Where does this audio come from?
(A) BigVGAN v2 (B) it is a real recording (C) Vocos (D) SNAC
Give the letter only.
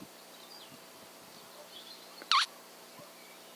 B